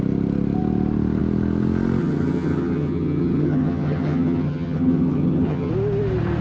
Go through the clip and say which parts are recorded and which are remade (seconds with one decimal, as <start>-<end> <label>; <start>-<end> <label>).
0.0-2.0 recorded; 2.0-5.7 remade; 5.7-6.4 recorded